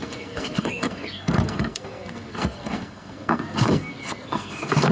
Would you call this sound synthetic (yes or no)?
yes